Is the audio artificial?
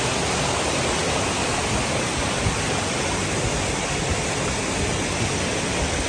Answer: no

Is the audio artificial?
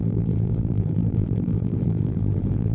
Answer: yes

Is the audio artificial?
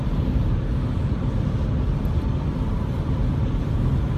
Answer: no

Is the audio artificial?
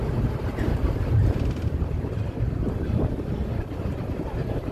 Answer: no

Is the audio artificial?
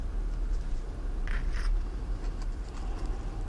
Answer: yes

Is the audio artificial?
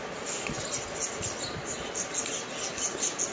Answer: no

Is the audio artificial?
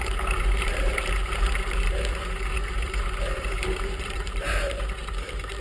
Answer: yes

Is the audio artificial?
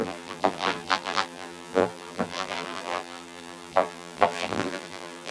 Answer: yes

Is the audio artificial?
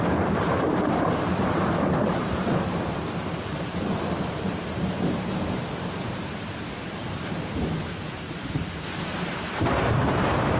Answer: yes